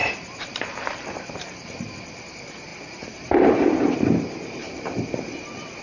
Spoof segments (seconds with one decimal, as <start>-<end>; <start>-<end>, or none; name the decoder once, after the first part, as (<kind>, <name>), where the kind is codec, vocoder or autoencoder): 0.0-1.9 (vocoder, BigVGAN v2); 2.7-3.5; 4.6-5.1